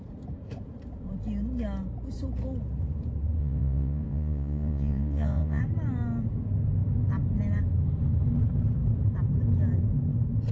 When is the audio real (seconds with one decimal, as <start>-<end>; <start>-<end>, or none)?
0.0-3.4; 5.6-10.5